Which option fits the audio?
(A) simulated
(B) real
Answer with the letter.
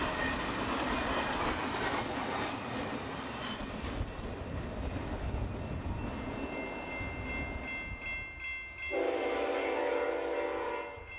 B